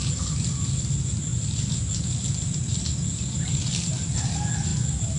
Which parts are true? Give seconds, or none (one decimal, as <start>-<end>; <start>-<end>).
0.0-5.2